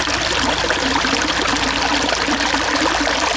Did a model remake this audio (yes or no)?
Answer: no